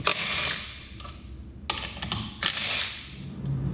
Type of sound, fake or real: real